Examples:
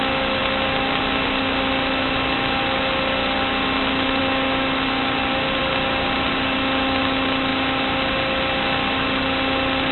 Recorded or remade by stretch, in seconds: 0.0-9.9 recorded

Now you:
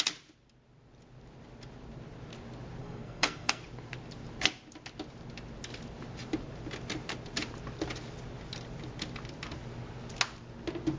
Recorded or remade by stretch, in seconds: 0.0-2.8 recorded; 2.8-3.6 remade; 3.6-11.0 recorded

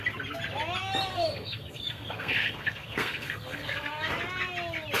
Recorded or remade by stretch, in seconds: 0.0-1.1 recorded; 1.1-4.1 remade; 4.1-5.0 recorded